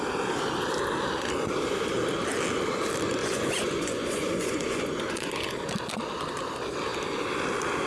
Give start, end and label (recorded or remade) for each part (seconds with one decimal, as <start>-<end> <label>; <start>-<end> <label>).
0.0-3.2 recorded; 3.2-5.3 remade; 5.3-7.9 recorded